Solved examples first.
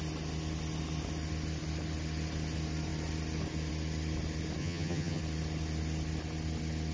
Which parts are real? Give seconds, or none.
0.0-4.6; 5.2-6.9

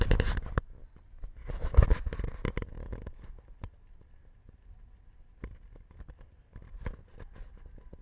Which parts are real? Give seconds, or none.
0.0-8.0